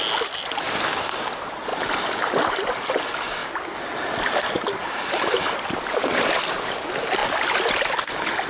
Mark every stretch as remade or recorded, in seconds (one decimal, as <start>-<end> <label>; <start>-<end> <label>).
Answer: 0.0-8.5 recorded